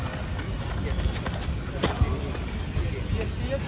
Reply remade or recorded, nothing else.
recorded